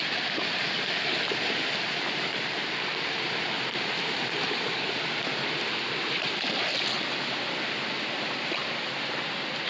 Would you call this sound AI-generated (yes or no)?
no